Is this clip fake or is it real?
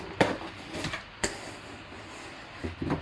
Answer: real